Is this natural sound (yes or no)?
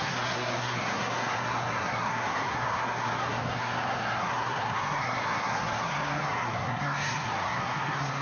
no